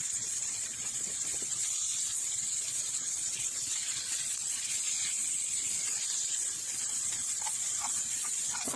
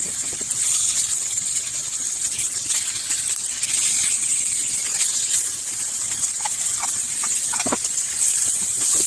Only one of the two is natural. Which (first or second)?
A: second